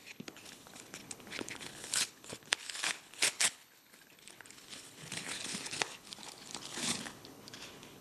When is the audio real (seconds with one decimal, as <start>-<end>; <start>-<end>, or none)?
none